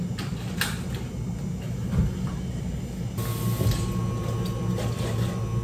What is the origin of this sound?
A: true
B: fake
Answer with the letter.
A